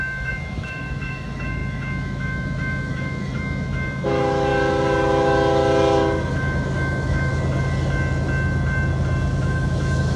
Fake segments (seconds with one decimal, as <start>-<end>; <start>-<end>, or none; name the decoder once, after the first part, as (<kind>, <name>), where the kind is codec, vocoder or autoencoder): 0.0-4.5 (autoencoder, DAC-VAE); 6.3-7.3; 9.4-10.2